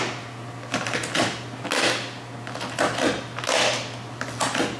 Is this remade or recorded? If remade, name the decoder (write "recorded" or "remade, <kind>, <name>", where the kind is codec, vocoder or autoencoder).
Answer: recorded